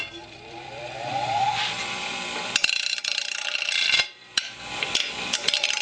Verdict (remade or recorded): remade